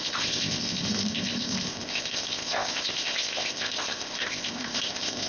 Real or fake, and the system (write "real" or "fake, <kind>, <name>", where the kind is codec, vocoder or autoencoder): fake, codec, ZipCodec